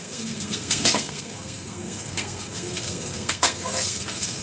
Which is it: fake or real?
fake